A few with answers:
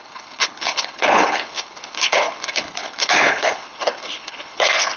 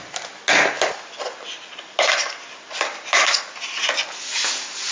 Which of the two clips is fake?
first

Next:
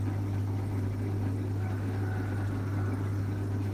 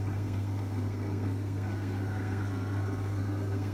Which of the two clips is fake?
second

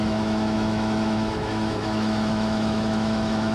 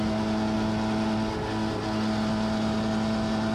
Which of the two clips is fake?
first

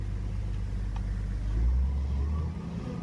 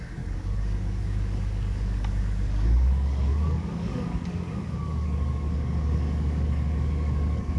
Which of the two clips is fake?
second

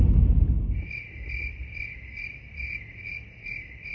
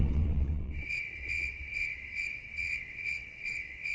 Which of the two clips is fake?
second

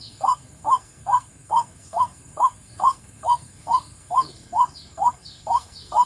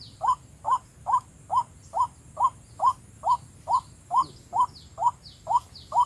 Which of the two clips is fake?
first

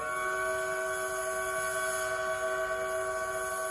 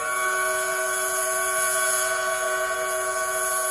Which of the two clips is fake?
second